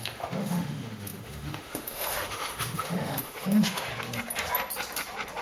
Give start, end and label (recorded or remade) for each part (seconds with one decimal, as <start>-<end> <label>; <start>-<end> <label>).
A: 0.0-3.9 remade; 3.9-5.4 recorded